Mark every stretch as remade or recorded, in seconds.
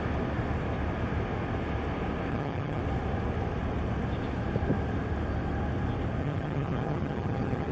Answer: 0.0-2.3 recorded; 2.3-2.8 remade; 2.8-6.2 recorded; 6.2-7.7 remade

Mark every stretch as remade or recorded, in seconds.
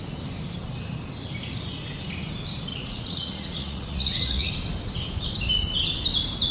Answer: 0.0-2.7 recorded; 2.7-4.5 remade; 4.5-6.5 recorded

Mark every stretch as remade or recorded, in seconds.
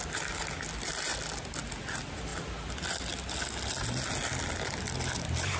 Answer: 0.0-5.6 recorded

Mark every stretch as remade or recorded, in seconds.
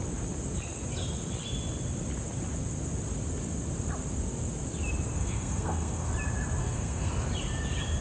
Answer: 0.0-5.2 recorded; 5.2-6.1 remade; 6.1-6.6 recorded; 6.6-7.1 remade; 7.1-8.0 recorded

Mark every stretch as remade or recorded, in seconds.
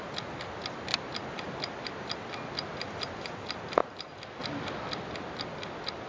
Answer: 0.0-6.1 recorded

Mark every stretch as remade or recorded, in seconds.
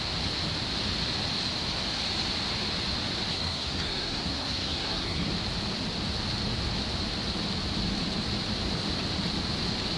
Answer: 0.0-3.3 recorded; 3.3-5.3 remade; 5.3-10.0 recorded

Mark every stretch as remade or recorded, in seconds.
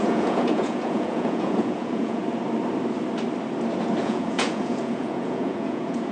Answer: 0.0-2.2 remade; 2.2-4.0 recorded; 4.0-6.1 remade